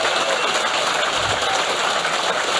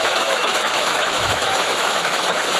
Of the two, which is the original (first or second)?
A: first